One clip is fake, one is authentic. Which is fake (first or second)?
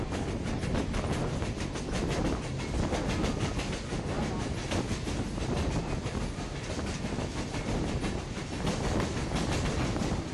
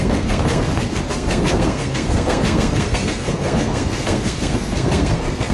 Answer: second